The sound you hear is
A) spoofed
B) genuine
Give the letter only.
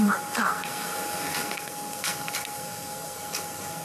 A